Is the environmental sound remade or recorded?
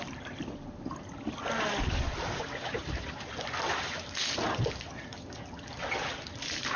remade